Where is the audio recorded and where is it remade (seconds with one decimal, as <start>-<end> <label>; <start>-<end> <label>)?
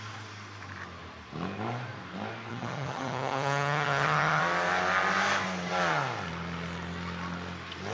0.0-2.5 recorded; 2.5-4.4 remade; 4.4-7.9 recorded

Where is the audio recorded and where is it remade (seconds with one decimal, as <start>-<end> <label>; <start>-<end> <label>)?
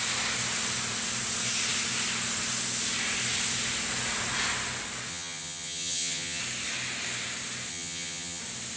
0.0-5.1 recorded; 5.1-6.4 remade; 6.4-7.7 recorded; 7.7-8.4 remade; 8.4-8.8 recorded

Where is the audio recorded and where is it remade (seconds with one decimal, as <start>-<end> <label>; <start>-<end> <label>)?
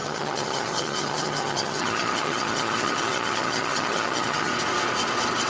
0.0-4.5 remade; 4.5-5.5 recorded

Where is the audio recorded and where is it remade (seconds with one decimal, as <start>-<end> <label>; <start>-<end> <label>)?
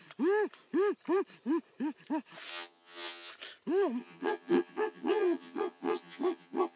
0.0-2.5 recorded; 2.5-3.3 remade; 3.3-4.0 recorded; 4.0-6.8 remade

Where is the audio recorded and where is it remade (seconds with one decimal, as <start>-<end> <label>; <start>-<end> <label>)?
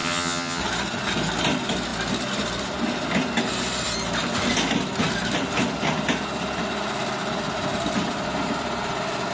0.0-0.6 remade; 0.6-9.3 recorded